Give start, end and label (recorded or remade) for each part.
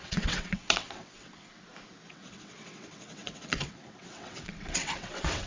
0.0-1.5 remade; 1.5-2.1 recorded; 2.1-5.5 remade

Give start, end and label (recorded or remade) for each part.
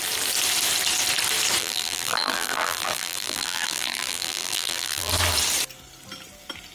0.0-1.6 recorded; 1.6-5.1 remade; 5.1-6.7 recorded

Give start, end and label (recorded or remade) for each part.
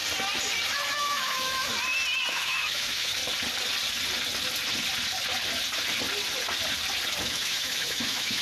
0.0-0.9 recorded; 0.9-1.7 remade; 1.7-2.3 recorded; 2.3-3.2 remade; 3.2-7.2 recorded; 7.2-8.4 remade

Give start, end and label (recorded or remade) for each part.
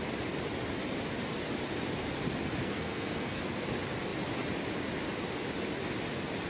0.0-2.6 recorded; 2.6-3.4 remade; 3.4-6.5 recorded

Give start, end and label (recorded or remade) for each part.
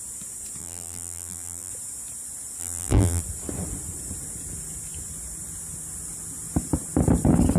0.0-0.6 recorded; 0.6-1.7 remade; 1.7-2.6 recorded; 2.6-3.2 remade; 3.2-7.6 recorded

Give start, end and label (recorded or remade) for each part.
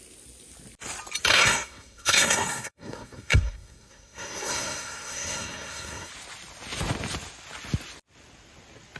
0.0-1.3 recorded; 1.3-6.1 remade; 6.1-9.0 recorded